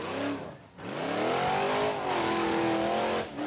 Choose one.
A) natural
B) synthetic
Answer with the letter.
A